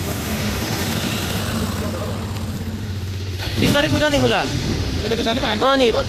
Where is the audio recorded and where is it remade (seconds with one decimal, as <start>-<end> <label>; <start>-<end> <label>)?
0.0-1.4 remade; 1.4-2.8 recorded; 2.8-6.1 remade